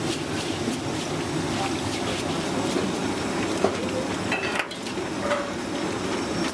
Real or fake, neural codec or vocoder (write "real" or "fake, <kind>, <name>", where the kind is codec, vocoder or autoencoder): real